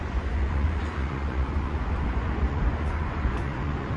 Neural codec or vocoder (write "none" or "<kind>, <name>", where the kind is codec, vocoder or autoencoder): vocoder, Vocos